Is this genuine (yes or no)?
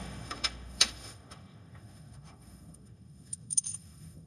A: no